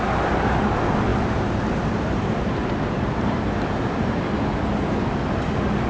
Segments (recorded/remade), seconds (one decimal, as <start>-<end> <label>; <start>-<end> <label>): 0.0-1.1 recorded; 1.1-4.4 remade; 4.4-5.9 recorded